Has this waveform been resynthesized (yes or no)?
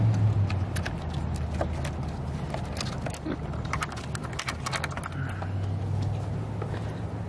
no